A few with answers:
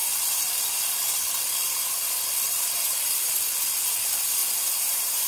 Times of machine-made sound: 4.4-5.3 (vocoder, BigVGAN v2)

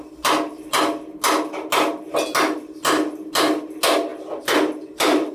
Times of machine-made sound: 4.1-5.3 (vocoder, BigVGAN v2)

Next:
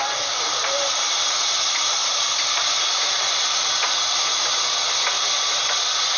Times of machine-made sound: none

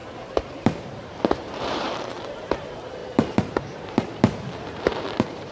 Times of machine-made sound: 0.6-5.5 (vocoder, BigVGAN v2)

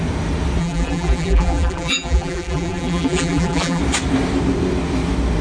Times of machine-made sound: 0.6-3.8 (vocoder, BigVGAN v2)

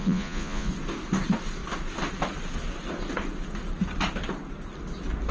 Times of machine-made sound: 0.0-0.7 (vocoder, Vocos)

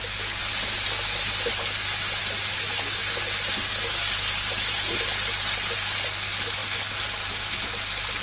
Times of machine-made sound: none

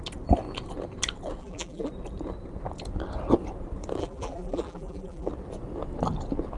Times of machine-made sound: 1.4-1.9 (vocoder, BigVGAN v2); 4.0-5.3